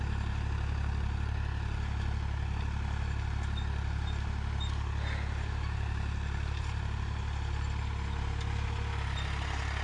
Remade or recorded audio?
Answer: recorded